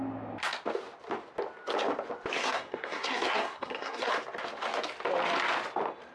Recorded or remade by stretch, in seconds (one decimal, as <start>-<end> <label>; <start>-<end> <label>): 0.0-2.4 recorded; 2.4-4.1 remade; 4.1-6.1 recorded